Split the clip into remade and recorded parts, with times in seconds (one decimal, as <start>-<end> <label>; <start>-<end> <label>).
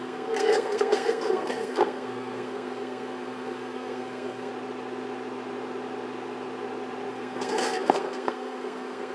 0.0-4.5 remade; 4.5-7.1 recorded; 7.1-9.1 remade